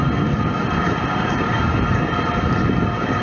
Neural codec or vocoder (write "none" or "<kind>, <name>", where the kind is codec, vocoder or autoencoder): none